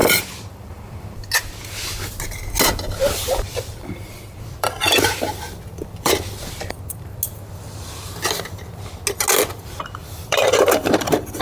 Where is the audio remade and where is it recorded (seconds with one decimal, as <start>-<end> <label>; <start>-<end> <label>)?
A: 0.0-0.7 remade; 0.7-3.0 recorded; 3.0-6.1 remade; 6.1-10.0 recorded; 10.0-11.4 remade